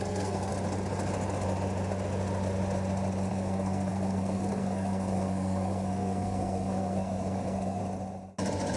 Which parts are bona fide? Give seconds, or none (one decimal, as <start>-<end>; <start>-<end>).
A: 0.5-3.3; 7.8-8.8